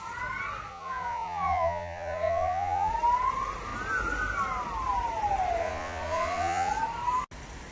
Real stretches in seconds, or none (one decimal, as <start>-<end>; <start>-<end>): 0.0-0.7; 2.9-5.6; 6.7-7.7